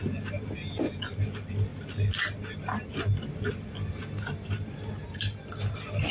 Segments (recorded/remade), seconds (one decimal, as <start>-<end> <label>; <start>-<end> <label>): 0.0-6.1 recorded